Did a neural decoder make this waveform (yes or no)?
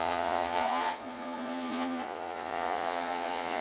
yes